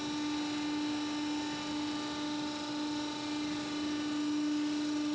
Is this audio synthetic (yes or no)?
no